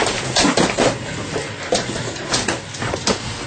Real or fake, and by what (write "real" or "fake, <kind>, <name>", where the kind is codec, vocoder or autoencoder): real